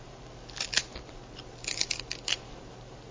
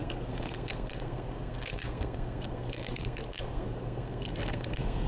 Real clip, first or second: first